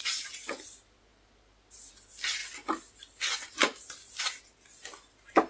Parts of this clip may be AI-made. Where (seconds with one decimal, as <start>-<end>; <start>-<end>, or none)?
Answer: none